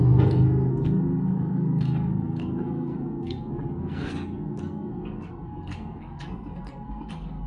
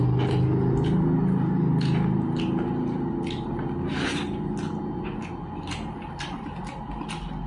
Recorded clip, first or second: second